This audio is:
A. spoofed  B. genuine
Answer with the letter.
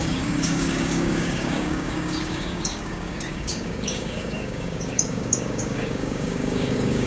A